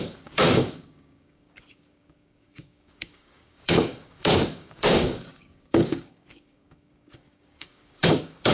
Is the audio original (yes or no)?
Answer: no